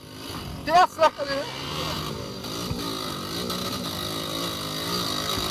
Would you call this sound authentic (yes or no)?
yes